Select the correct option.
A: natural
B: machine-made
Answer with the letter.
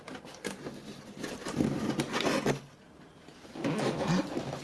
A